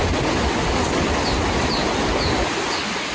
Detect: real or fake real